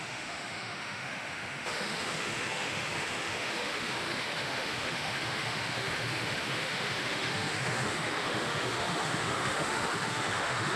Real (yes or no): no